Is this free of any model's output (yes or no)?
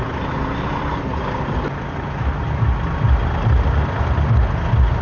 yes